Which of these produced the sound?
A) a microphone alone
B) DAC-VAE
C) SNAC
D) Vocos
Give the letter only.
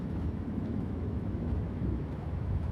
B